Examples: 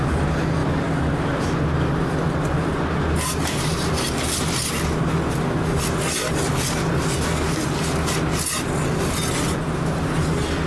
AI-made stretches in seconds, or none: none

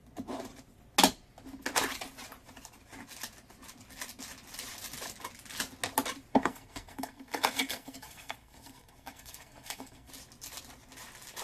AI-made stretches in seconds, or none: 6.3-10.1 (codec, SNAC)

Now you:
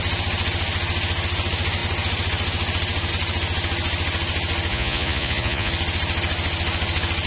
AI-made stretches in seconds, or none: 4.7-5.7 (vocoder, Vocos)

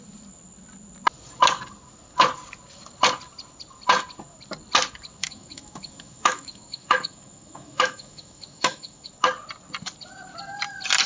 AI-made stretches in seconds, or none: 5.2-9.1 (autoencoder, DAC-VAE)